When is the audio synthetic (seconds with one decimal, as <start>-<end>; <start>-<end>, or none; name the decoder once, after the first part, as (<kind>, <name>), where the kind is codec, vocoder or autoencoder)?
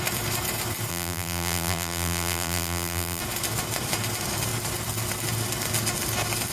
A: 0.9-3.2 (vocoder, BigVGAN v2)